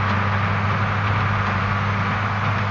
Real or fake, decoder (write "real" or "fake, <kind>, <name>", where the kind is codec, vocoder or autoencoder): real